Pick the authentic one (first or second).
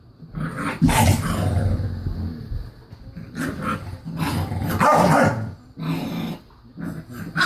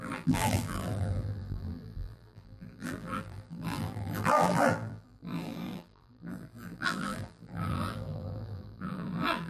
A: first